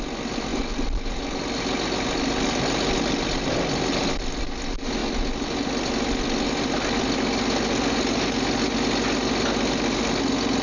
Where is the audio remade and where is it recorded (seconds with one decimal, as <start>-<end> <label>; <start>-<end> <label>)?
0.0-10.6 recorded